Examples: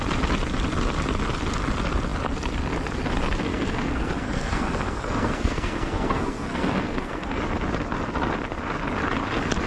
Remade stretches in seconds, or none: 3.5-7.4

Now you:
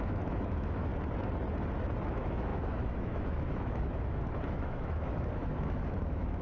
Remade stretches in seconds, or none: 0.0-0.9; 2.1-6.4

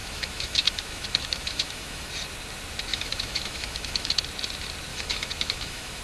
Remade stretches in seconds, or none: 0.0-2.1; 2.9-4.1; 4.9-6.0

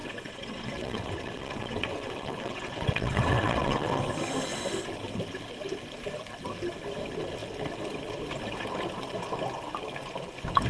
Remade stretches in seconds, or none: 0.0-4.0

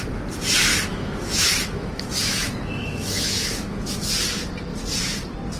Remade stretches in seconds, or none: 0.7-4.1